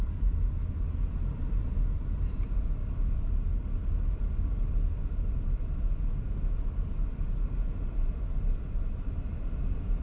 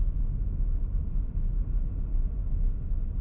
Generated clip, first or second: first